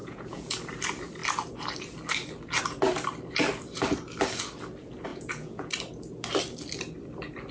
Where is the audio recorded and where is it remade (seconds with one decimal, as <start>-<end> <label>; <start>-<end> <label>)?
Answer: 0.0-0.6 remade; 0.6-5.1 recorded; 5.1-5.7 remade; 5.7-7.5 recorded